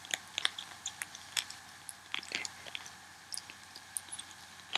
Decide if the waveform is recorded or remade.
recorded